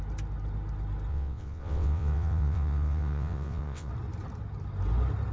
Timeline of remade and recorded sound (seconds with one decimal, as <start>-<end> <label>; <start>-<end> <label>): 0.0-1.1 recorded; 1.1-3.9 remade; 3.9-5.3 recorded